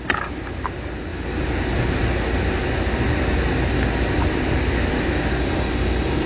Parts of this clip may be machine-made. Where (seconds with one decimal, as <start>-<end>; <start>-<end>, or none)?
none